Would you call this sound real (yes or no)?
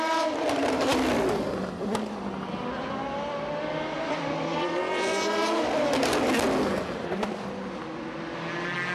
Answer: yes